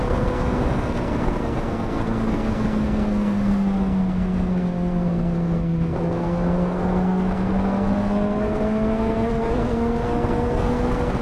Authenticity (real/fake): fake